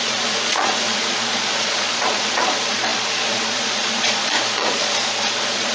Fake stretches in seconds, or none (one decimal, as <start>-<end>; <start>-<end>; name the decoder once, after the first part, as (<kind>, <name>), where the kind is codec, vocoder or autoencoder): 0.0-5.7 (vocoder, Vocos)